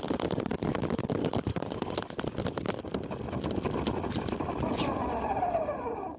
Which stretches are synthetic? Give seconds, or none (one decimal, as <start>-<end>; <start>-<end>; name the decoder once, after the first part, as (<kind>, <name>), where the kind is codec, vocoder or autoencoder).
none